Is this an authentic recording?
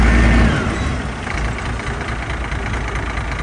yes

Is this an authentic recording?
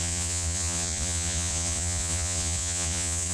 no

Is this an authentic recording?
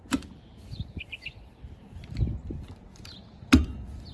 yes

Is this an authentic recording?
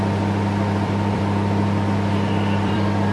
no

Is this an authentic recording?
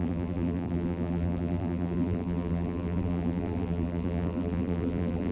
no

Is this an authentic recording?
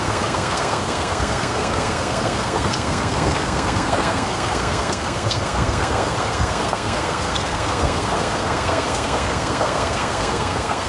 no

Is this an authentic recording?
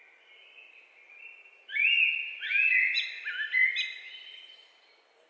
yes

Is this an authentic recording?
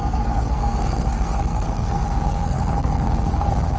no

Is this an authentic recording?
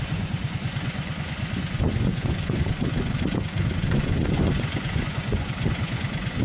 no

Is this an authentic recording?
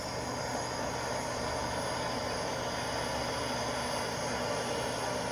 yes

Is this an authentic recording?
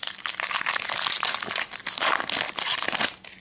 yes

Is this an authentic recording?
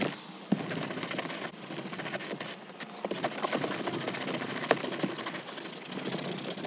yes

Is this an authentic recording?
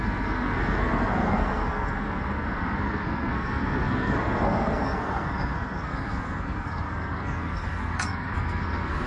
no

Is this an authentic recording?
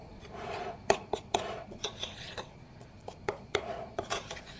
no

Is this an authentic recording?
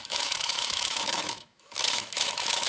no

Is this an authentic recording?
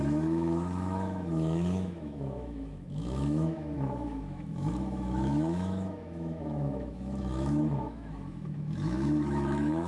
no